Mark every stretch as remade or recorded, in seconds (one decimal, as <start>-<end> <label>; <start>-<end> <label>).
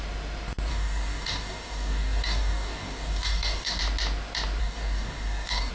0.0-0.7 recorded; 0.7-3.8 remade; 3.8-4.6 recorded; 4.6-5.7 remade